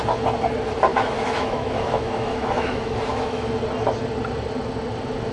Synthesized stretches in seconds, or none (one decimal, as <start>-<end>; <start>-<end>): 0.9-3.5